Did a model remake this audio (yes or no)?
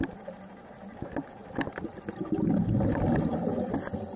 no